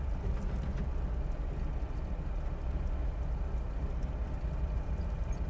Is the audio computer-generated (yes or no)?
no